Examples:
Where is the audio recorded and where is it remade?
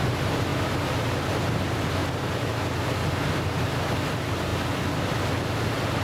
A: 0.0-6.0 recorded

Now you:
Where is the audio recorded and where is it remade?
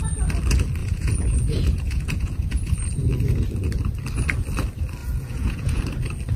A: 0.0-0.8 recorded; 0.8-2.6 remade; 2.6-5.0 recorded; 5.0-5.8 remade; 5.8-6.4 recorded